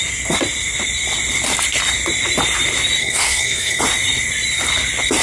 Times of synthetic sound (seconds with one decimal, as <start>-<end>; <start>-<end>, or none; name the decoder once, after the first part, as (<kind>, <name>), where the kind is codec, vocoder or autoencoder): 3.0-3.8 (codec, SNAC)

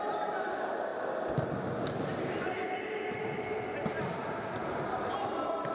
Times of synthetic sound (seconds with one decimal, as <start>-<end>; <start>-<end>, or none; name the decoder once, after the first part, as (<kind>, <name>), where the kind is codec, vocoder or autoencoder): none